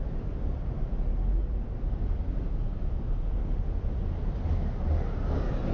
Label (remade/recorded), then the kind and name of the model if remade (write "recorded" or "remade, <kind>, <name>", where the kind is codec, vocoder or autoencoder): recorded